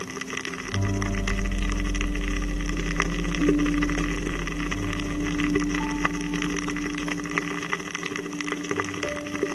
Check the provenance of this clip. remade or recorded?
recorded